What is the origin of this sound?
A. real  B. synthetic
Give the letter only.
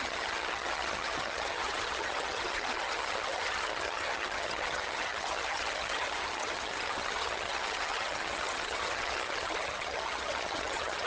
B